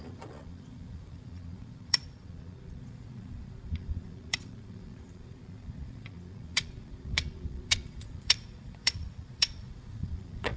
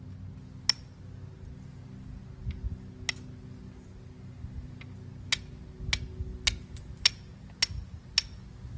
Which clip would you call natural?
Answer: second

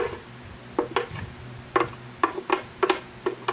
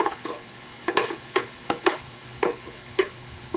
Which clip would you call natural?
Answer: first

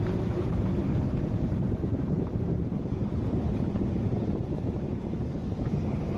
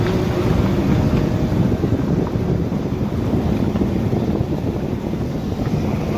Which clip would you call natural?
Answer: second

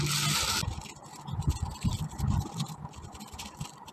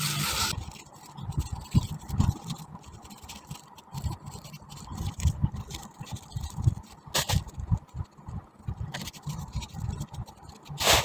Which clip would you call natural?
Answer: first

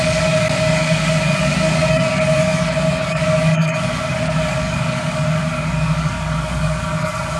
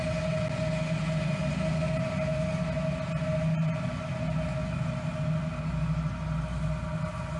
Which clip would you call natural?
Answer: second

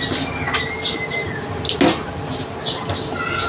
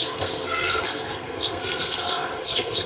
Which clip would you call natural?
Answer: first